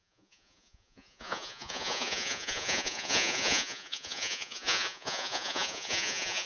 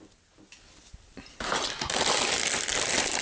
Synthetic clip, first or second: first